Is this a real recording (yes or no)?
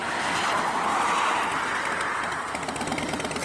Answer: yes